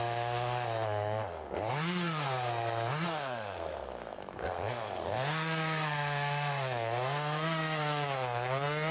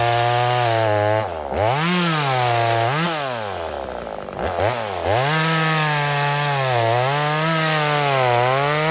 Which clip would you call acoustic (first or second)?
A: second